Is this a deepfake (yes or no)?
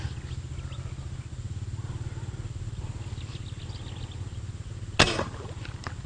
no